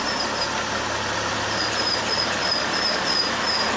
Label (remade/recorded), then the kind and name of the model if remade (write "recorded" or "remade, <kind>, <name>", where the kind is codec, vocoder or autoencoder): recorded